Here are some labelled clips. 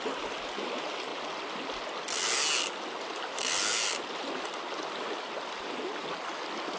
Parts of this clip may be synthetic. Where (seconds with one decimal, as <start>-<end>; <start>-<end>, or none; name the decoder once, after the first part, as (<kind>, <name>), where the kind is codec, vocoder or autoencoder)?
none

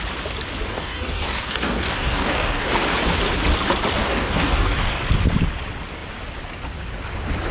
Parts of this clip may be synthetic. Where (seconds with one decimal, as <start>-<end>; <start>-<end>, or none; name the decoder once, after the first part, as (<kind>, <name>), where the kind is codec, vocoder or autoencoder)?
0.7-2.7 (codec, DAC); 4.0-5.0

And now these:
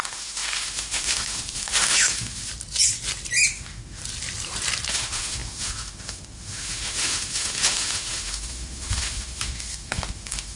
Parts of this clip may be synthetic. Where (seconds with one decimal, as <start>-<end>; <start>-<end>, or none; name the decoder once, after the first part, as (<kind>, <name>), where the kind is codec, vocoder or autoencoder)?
0.0-2.5 (autoencoder, DAC-VAE); 3.5-4.0; 4.9-10.6

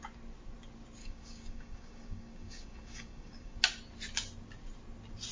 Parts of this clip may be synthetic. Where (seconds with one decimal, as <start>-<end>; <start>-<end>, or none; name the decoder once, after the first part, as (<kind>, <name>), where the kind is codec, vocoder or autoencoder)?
1.0-3.6 (codec, DAC)

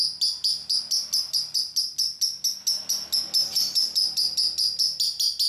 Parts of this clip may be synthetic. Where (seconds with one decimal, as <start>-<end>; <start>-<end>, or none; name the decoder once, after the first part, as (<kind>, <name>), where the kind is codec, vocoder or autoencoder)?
none

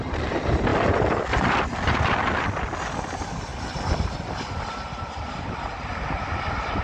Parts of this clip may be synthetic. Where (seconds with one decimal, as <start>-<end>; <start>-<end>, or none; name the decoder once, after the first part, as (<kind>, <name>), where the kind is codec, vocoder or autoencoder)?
none

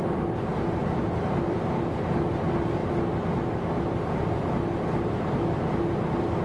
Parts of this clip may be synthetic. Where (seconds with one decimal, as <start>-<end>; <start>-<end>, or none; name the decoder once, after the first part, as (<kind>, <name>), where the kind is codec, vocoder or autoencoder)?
0.8-1.8 (vocoder, BigVGAN v2)